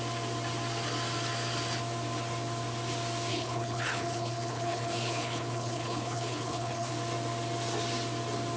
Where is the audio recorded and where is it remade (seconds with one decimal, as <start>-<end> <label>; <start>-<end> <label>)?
0.0-3.3 recorded; 3.3-6.9 remade; 6.9-8.6 recorded